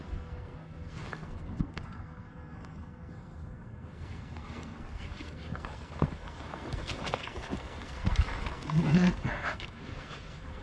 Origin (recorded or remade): remade